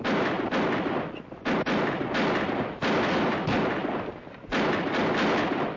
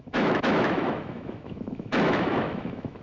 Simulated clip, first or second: second